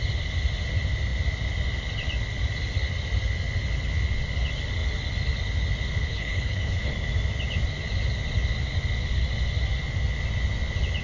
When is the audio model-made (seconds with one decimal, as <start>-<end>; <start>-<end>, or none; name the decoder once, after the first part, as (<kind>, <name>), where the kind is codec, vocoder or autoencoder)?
6.1-6.9 (codec, HILCodec)